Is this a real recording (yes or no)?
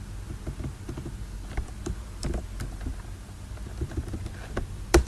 yes